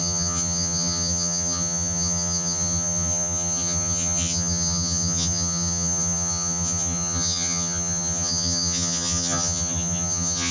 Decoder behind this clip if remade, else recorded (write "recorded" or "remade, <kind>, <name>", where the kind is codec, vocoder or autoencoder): remade, vocoder, HiFi-GAN